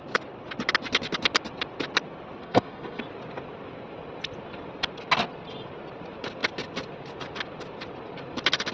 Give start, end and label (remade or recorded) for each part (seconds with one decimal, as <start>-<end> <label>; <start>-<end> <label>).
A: 0.0-2.4 recorded; 2.4-3.0 remade; 3.0-8.7 recorded